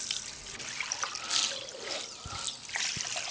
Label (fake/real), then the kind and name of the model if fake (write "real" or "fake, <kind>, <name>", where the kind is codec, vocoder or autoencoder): real